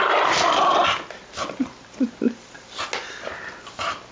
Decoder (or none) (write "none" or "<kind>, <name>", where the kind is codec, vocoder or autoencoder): none